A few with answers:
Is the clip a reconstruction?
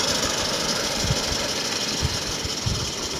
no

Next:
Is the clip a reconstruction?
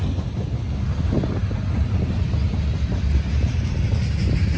no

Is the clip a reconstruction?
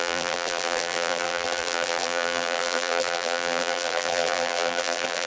yes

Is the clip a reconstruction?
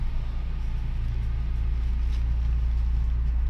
no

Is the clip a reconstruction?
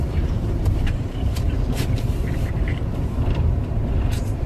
yes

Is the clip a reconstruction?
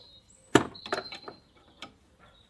yes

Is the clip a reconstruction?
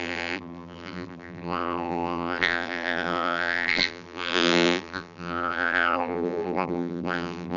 yes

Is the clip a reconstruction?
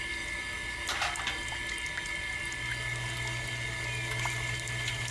no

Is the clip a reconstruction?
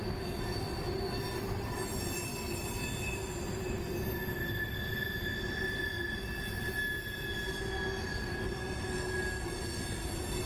no